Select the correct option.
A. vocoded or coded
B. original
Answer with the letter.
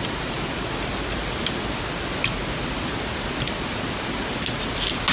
B